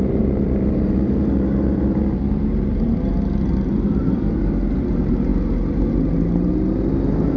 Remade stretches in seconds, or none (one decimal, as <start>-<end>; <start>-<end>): none